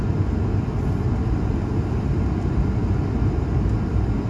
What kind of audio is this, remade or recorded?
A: recorded